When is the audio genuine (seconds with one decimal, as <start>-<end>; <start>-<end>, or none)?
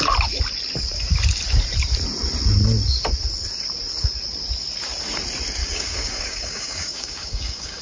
0.0-5.6